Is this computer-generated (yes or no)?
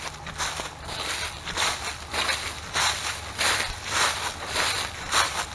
no